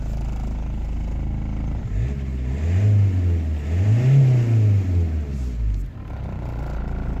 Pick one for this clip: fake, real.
real